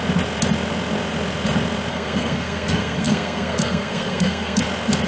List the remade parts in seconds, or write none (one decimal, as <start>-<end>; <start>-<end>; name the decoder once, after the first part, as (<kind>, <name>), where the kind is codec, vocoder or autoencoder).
1.9-4.6 (codec, SNAC)